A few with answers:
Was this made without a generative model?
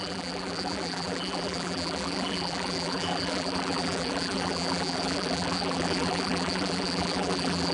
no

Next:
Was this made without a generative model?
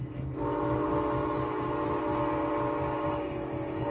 yes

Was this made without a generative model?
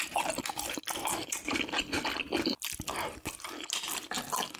yes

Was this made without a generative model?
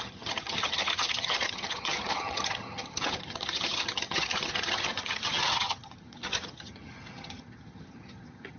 no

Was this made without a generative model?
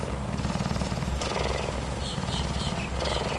yes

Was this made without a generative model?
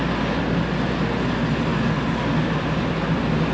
yes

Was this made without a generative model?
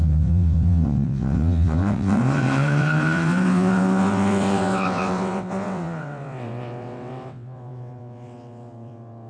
no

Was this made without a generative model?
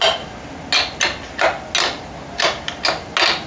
yes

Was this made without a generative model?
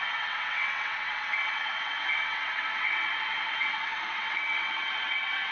no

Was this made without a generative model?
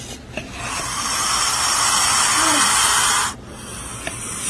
yes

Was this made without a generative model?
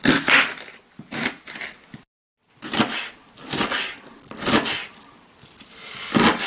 yes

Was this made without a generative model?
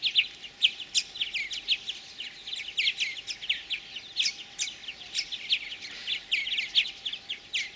yes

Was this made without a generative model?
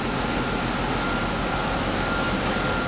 yes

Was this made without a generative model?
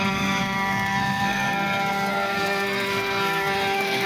no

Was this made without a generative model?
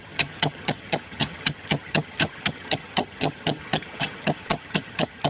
no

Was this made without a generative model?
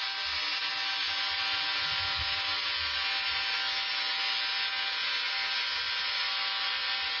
yes